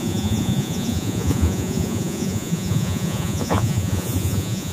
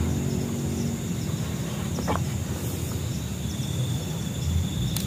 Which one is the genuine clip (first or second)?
second